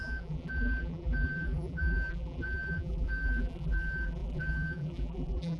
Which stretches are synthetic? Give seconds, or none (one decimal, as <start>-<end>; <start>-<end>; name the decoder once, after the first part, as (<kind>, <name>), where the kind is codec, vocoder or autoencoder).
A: 0.0-5.6 (vocoder, BigVGAN v2)